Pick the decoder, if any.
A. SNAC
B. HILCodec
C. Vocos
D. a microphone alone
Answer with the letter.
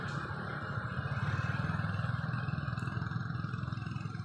D